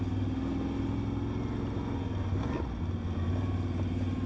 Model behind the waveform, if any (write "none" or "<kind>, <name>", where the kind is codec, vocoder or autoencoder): none